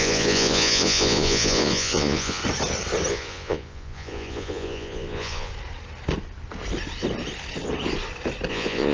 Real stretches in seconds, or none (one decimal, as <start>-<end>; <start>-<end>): 2.4-3.1; 5.5-8.5